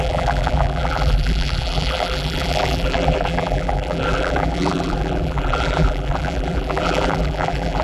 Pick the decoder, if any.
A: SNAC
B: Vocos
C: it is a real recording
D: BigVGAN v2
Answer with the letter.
D